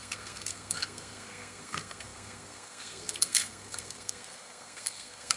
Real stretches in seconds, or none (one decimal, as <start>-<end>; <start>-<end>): none